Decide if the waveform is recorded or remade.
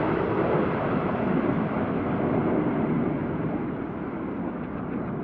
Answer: recorded